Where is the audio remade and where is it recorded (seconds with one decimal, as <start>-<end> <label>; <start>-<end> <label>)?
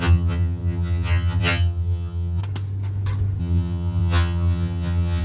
0.0-2.4 remade; 2.4-3.4 recorded; 3.4-5.2 remade